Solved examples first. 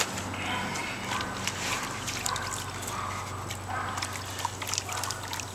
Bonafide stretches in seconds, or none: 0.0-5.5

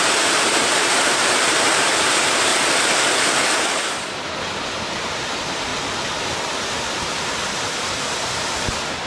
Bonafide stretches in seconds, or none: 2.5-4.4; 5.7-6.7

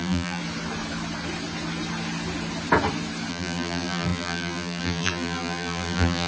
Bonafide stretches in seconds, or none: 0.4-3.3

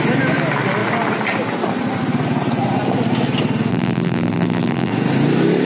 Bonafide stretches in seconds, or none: 0.0-3.7; 4.9-5.6

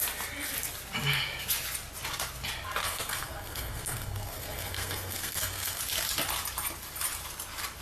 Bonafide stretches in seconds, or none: 0.0-2.8; 5.8-7.8

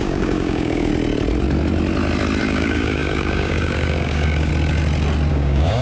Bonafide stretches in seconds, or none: 0.9-2.4; 4.5-5.3

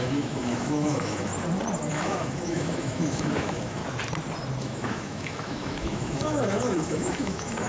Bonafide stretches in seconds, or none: 1.3-1.9; 3.8-4.6